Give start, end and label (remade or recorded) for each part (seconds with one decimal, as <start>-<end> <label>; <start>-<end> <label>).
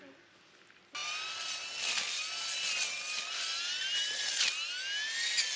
0.0-5.6 recorded